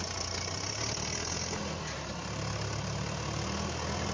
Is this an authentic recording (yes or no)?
yes